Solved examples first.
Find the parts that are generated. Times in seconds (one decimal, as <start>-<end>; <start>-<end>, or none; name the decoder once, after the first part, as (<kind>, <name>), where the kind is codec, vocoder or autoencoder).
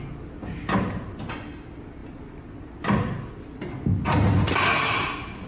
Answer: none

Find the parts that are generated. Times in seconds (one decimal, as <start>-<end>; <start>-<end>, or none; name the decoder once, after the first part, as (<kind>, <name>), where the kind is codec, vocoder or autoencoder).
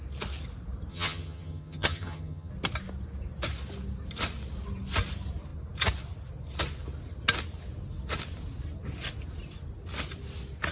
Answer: 0.9-2.5 (vocoder, HiFi-GAN)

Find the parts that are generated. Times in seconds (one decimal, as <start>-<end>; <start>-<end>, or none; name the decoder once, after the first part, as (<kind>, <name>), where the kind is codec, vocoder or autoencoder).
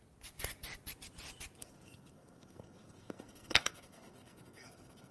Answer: 1.6-5.1 (codec, SNAC)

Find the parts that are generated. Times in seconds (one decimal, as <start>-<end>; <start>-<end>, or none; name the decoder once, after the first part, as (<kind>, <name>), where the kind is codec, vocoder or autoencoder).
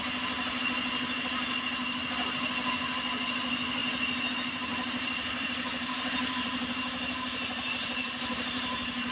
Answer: 4.7-9.1 (vocoder, BigVGAN v2)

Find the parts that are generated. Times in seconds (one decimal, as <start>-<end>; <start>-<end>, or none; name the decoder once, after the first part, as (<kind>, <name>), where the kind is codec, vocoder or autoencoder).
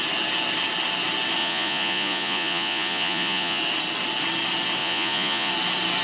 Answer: 1.4-3.6 (vocoder, Vocos); 4.8-5.5